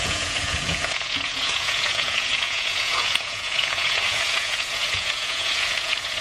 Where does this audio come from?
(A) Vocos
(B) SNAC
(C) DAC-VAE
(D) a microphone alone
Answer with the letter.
A